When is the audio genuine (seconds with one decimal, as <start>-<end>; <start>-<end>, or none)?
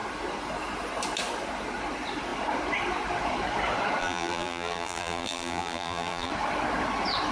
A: 0.0-4.0; 6.3-7.3